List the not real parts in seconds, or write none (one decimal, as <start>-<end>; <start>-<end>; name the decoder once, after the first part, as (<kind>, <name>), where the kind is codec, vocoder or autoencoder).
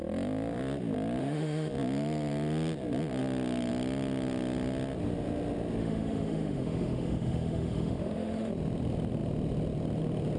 1.2-1.7 (autoencoder, DAC-VAE); 5.8-8.5